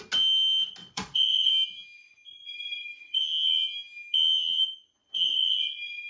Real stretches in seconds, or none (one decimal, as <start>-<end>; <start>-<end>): 0.0-0.8; 1.5-2.3; 3.2-5.0